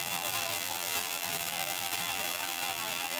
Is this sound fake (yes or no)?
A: yes